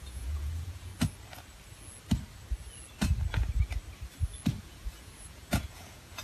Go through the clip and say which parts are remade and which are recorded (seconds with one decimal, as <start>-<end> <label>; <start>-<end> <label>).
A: 0.0-0.9 remade; 0.9-4.6 recorded; 4.6-6.2 remade